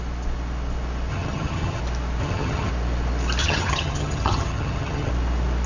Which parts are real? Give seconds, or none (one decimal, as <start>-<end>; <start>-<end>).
0.0-1.1; 1.8-2.2; 2.7-3.4; 5.1-5.7